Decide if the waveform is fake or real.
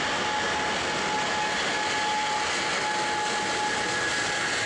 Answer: real